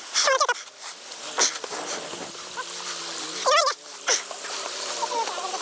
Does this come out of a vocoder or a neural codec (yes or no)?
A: no